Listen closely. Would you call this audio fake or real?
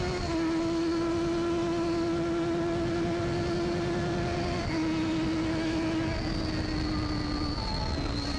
real